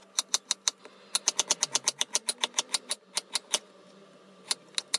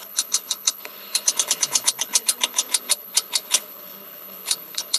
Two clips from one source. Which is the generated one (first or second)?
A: second